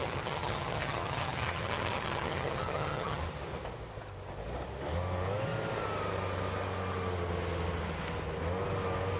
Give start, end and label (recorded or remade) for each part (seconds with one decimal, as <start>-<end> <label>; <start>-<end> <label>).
0.0-3.2 remade; 3.2-9.2 recorded